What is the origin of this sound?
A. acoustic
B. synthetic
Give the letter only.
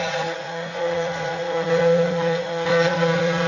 B